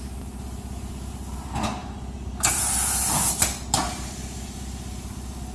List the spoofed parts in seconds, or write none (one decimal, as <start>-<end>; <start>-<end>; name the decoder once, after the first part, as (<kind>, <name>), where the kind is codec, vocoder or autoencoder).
none